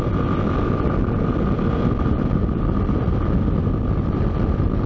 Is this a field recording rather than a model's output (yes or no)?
yes